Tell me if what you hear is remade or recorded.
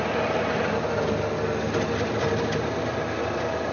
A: recorded